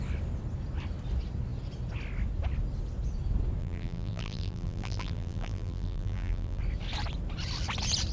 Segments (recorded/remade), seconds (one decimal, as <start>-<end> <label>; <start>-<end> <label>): 0.0-3.6 recorded; 3.6-6.6 remade; 6.6-8.1 recorded